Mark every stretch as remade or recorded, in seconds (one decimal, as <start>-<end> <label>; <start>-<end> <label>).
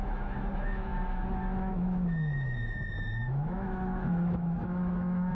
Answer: 0.0-0.9 remade; 0.9-1.7 recorded; 1.7-5.3 remade